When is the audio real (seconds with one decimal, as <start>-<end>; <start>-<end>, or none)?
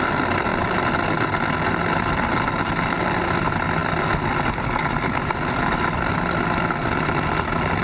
0.0-7.8